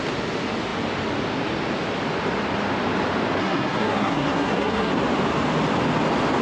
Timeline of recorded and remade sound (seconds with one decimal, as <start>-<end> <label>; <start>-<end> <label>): 0.0-3.4 recorded; 3.4-4.9 remade; 4.9-6.4 recorded